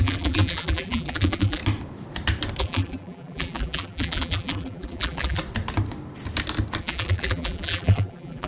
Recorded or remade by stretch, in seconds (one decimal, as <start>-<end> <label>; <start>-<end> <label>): 0.0-1.6 remade; 1.6-2.6 recorded; 2.6-5.4 remade; 5.4-6.8 recorded; 6.8-8.5 remade